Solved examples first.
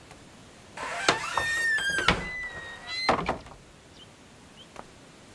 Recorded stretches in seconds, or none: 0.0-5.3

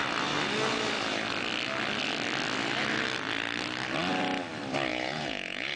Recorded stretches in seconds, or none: 0.0-4.9

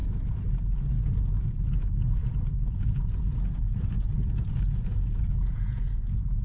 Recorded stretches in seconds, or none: none

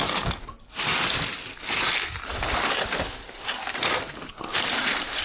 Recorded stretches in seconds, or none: 0.0-5.2